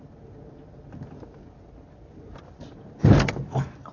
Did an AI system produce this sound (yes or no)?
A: no